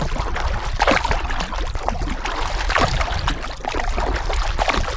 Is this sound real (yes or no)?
yes